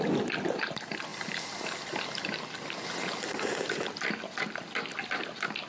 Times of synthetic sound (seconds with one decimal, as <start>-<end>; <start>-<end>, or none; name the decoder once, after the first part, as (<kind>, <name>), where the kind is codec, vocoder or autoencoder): none